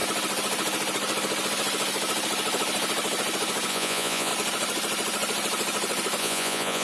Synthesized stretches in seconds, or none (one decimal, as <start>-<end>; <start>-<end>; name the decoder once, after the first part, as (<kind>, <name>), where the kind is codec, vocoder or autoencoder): 3.7-4.3 (vocoder, Vocos); 6.2-6.8